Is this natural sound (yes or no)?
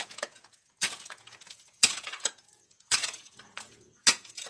no